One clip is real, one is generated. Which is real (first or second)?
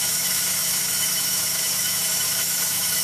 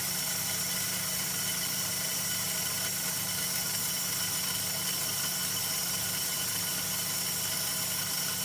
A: second